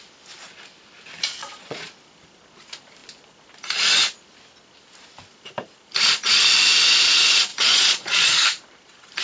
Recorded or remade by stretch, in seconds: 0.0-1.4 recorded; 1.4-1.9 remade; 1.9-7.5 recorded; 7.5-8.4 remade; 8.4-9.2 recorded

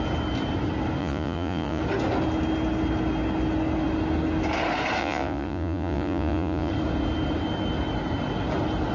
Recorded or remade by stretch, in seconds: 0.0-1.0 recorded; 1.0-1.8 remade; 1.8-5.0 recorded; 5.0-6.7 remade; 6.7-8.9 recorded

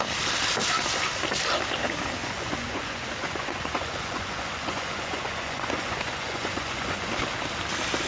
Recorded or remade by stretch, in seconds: 0.0-2.2 recorded; 2.2-7.1 remade; 7.1-8.1 recorded

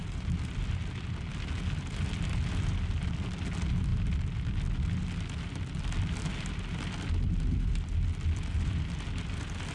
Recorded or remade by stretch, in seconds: 0.0-9.7 recorded

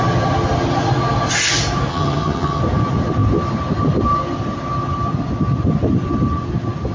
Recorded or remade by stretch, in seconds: 0.0-1.9 recorded; 1.9-2.6 remade; 2.6-6.9 recorded

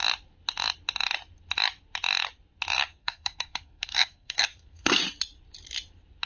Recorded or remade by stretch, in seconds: 0.0-2.9 recorded; 2.9-5.0 remade; 5.0-6.3 recorded

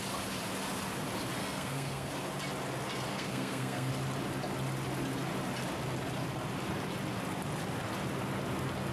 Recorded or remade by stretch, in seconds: 0.0-1.4 recorded; 1.4-2.1 remade; 2.1-3.1 recorded; 3.1-3.9 remade; 3.9-8.9 recorded